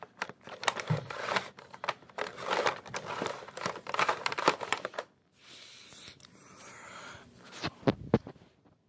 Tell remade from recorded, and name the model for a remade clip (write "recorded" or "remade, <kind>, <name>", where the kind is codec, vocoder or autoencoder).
remade, vocoder, BigVGAN v2